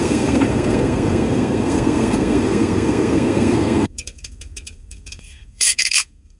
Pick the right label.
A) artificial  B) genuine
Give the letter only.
A